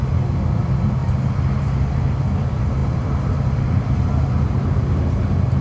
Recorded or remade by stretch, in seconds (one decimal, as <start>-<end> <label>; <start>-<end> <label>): 0.0-5.6 recorded